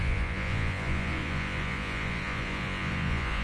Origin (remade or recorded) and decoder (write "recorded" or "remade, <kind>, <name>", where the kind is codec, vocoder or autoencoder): remade, vocoder, Vocos